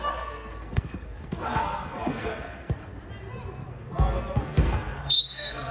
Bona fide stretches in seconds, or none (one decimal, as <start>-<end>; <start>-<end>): 2.9-3.7